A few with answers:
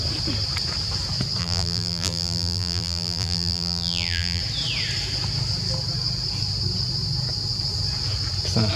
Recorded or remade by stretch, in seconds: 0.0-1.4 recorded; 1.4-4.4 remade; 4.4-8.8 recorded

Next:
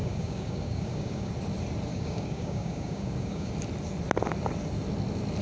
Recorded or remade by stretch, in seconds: 0.0-1.3 remade; 1.3-1.9 recorded; 1.9-3.5 remade; 3.5-5.4 recorded